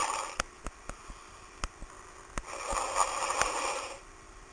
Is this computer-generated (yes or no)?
no